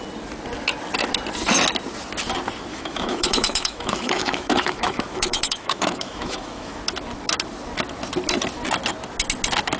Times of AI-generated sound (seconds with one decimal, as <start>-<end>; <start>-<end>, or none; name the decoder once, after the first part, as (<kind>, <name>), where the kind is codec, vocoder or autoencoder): 2.7-6.8 (autoencoder, DAC-VAE)